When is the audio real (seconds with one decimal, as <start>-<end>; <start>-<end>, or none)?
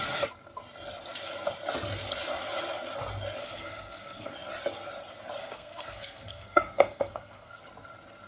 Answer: 0.0-3.4; 4.3-5.4; 7.6-8.3